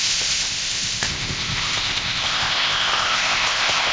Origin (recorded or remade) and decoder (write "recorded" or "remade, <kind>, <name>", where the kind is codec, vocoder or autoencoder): remade, codec, ZipCodec